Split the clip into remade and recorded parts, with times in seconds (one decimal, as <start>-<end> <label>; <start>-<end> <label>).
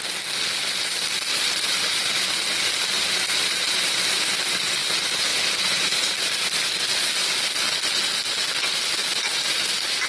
0.0-1.3 recorded; 1.3-4.4 remade; 4.4-5.3 recorded; 5.3-6.0 remade; 6.0-10.1 recorded